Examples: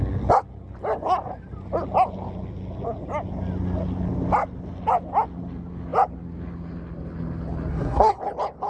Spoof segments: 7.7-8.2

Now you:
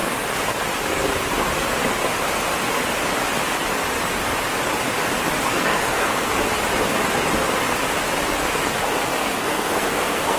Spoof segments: 5.5-6.3; 9.2-10.4